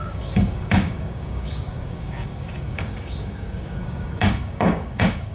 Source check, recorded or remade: remade